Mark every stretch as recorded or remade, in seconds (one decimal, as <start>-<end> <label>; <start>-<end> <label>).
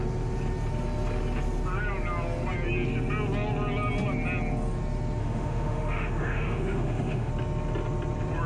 0.0-5.2 recorded; 5.2-7.3 remade; 7.3-8.5 recorded